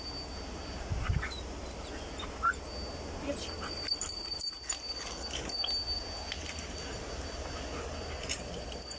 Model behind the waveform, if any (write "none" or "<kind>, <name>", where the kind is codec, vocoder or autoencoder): none